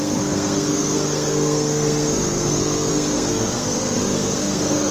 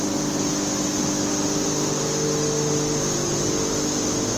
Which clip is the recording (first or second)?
second